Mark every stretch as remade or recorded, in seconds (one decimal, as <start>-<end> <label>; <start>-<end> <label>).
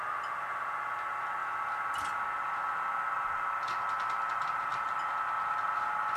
0.0-6.2 recorded